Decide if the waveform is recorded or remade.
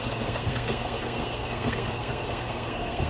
remade